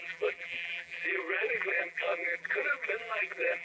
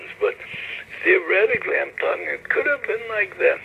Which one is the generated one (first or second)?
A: first